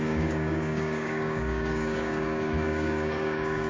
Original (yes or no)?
no